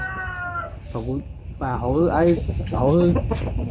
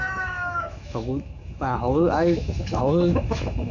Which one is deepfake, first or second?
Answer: second